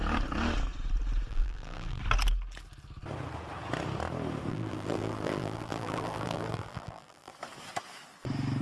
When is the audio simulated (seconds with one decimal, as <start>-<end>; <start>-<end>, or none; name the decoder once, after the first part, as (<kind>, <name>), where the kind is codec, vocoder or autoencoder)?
1.3-2.0 (vocoder, BigVGAN v2); 4.5-7.3

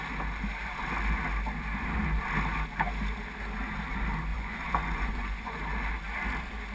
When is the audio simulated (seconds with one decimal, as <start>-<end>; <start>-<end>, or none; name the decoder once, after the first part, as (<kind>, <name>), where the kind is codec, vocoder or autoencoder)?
4.3-5.6 (vocoder, Vocos)

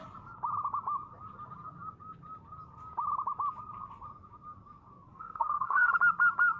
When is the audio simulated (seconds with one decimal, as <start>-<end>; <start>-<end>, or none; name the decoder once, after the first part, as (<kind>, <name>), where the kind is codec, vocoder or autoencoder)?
5.1-5.9 (codec, SNAC)

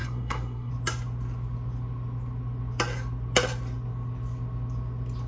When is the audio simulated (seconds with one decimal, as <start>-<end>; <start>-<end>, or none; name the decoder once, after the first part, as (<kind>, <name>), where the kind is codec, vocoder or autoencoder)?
0.0-0.7 (codec, SNAC)

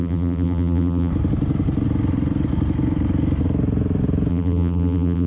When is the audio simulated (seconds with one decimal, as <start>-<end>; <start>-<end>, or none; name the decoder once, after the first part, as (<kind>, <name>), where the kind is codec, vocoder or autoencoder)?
0.0-1.1 (vocoder, BigVGAN v2); 4.3-5.3

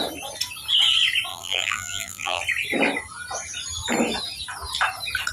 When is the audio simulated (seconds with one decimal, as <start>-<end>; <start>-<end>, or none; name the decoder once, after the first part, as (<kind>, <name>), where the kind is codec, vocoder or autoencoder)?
1.3-2.4 (vocoder, BigVGAN v2)

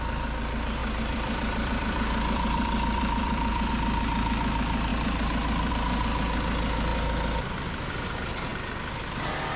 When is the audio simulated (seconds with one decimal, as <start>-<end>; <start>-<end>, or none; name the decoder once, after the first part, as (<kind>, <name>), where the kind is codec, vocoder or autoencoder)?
0.8-3.7 (vocoder, BigVGAN v2)